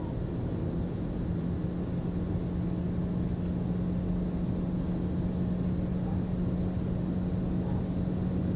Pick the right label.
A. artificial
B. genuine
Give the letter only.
B